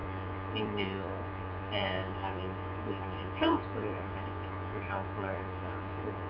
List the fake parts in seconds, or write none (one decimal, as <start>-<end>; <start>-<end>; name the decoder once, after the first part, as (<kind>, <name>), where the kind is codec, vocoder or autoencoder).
0.0-6.3 (vocoder, Vocos)